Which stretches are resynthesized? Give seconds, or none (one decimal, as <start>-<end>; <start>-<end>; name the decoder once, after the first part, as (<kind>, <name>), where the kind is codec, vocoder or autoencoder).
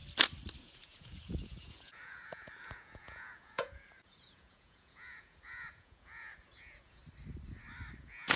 0.6-7.0 (vocoder, Vocos); 8.0-8.4